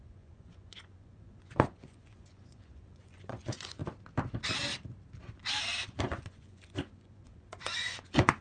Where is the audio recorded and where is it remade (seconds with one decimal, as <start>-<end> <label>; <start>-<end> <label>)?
0.0-3.8 remade; 3.8-5.9 recorded; 5.9-8.4 remade